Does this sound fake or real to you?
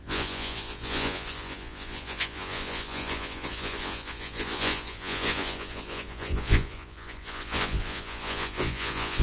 fake